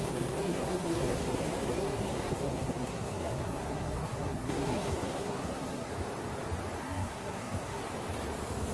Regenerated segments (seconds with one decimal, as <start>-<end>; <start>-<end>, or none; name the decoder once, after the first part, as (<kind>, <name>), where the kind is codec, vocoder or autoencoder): 0.0-5.9 (codec, SNAC); 6.8-7.8